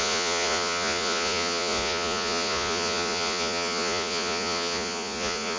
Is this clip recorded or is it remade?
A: remade